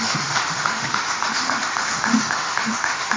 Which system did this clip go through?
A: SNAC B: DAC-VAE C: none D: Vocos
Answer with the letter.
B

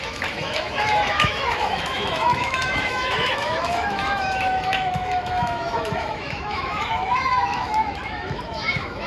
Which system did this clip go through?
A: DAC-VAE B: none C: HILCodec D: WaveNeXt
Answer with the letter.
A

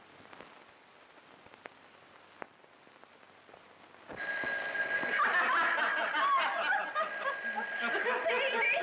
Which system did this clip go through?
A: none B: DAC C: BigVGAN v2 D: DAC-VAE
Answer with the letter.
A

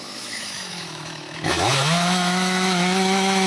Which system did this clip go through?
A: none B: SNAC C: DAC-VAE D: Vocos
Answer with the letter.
C